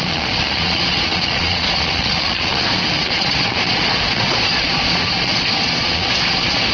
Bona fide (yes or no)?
no